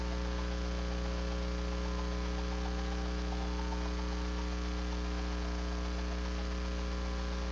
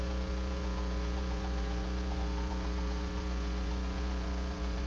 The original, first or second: first